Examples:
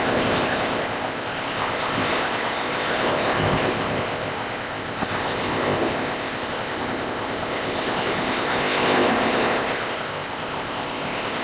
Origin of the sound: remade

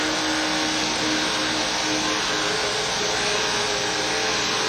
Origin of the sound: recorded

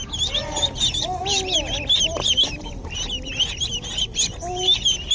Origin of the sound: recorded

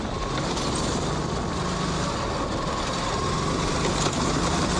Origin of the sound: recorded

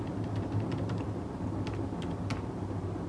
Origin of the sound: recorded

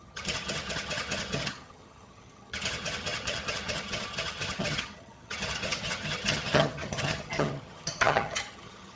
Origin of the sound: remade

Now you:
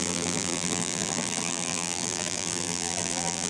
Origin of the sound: remade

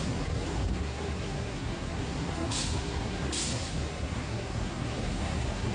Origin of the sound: remade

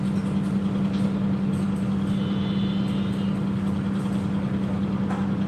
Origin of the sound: recorded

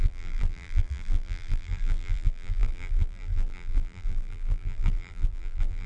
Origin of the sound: remade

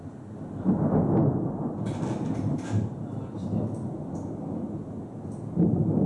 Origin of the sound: recorded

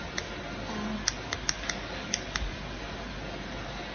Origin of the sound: recorded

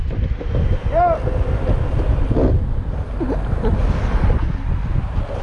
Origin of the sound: recorded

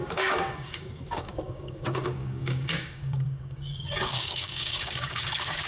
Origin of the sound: remade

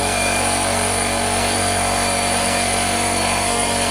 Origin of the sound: remade